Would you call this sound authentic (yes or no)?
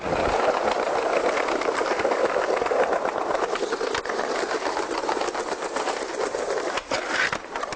no